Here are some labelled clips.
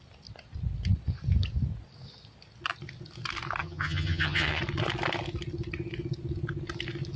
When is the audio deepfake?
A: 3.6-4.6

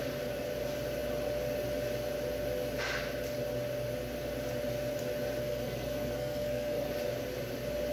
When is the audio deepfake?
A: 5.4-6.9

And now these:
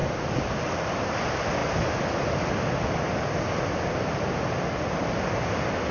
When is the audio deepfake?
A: none